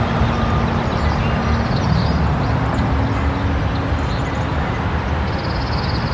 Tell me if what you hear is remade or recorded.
recorded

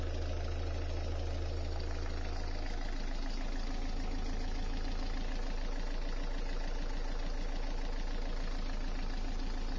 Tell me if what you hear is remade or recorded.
recorded